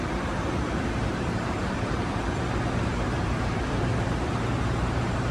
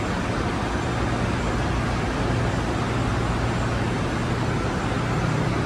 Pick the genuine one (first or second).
second